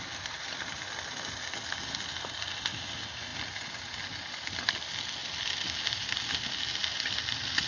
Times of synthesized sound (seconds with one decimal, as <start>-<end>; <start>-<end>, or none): none